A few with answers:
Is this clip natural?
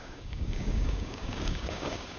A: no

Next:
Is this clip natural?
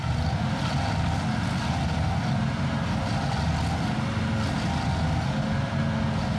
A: yes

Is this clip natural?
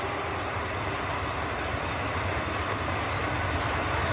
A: yes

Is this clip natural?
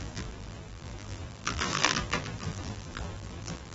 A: no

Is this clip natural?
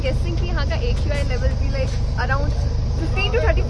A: yes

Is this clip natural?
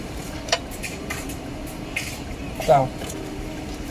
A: no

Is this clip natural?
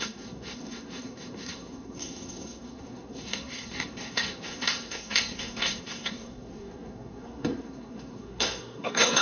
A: no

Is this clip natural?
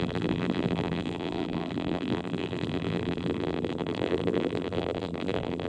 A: no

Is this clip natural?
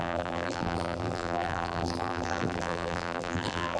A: no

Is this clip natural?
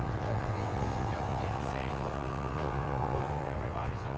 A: no